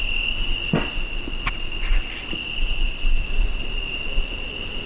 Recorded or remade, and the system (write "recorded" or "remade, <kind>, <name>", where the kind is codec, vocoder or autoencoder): recorded